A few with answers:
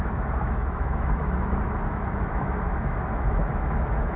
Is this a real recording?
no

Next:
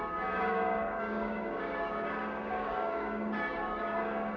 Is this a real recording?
no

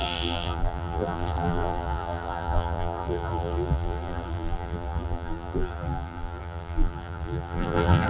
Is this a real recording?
no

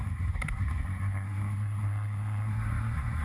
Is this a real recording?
no